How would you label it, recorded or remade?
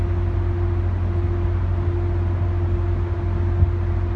recorded